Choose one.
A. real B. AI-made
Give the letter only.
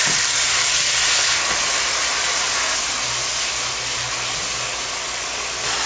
A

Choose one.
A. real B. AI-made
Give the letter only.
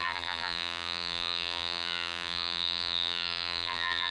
B